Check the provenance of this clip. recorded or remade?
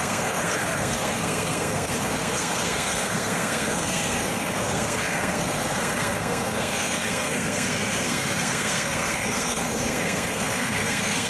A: remade